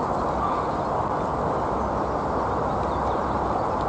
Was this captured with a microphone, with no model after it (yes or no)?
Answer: yes